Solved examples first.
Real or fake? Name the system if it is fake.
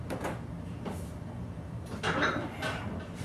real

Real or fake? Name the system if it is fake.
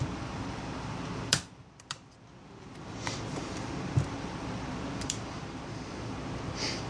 fake, vocoder, BigVGAN v2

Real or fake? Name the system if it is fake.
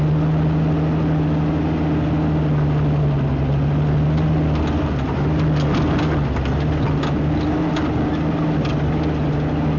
real